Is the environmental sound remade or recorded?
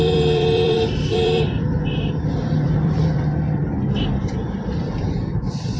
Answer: remade